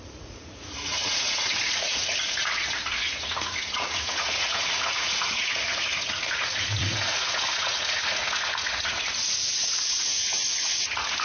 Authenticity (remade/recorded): remade